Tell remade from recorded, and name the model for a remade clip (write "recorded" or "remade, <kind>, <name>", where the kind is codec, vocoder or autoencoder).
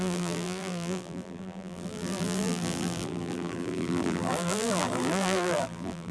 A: remade, vocoder, BigVGAN v2